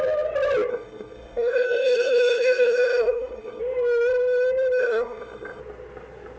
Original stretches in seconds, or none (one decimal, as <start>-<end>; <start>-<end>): 0.0-0.7; 3.6-4.8; 5.6-6.4